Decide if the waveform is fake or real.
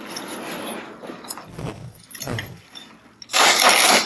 real